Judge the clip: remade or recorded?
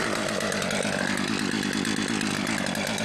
recorded